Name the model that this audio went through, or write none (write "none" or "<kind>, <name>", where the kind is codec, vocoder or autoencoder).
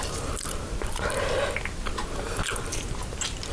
none